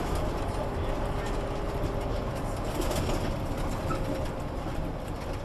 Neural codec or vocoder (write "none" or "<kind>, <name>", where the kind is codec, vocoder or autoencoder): none